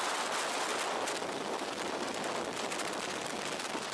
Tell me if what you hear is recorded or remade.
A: recorded